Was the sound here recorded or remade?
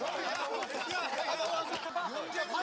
recorded